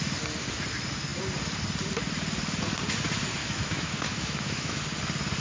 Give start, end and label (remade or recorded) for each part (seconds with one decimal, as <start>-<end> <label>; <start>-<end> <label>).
0.0-3.4 recorded; 3.4-4.8 remade; 4.8-5.4 recorded